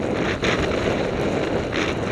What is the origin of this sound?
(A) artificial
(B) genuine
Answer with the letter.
B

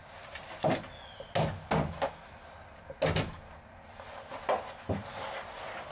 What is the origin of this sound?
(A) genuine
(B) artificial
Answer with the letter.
A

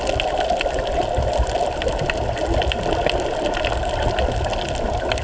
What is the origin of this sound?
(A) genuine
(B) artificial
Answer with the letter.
A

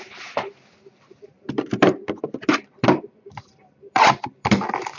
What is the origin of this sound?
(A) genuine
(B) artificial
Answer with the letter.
B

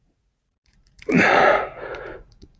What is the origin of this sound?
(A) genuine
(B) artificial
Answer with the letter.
B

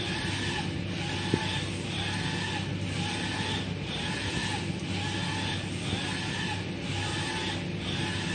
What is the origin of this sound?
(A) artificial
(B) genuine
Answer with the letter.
B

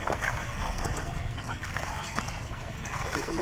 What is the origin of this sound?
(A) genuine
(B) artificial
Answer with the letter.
B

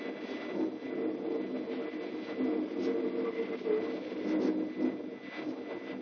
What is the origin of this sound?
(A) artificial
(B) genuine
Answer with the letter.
B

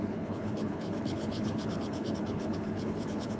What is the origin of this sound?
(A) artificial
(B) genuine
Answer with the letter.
A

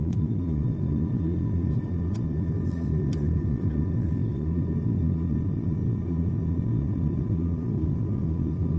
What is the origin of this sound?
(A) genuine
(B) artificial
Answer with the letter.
B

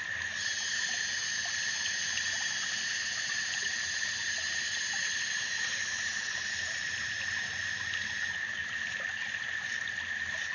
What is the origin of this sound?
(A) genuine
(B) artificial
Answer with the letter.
A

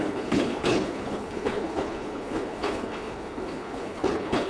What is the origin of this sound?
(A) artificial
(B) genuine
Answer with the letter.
A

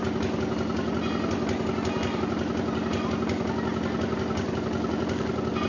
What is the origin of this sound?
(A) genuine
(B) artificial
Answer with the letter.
A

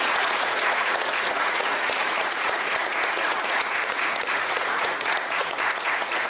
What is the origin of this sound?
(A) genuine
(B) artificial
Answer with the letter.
B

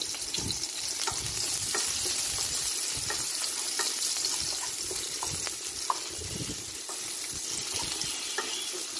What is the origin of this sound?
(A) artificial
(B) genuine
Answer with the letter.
B